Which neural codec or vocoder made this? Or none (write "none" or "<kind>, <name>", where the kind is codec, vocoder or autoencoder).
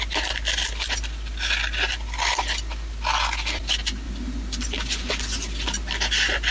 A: none